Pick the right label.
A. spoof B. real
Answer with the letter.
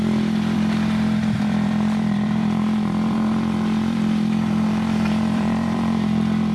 A